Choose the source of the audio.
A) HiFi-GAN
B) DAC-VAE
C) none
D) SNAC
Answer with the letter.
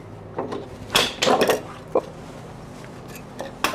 C